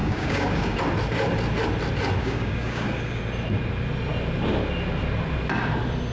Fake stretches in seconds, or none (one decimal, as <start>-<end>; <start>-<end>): 0.0-0.8; 2.2-3.2